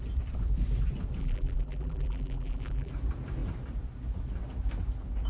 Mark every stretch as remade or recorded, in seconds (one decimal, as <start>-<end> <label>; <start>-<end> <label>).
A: 0.0-1.2 recorded; 1.2-2.9 remade; 2.9-5.3 recorded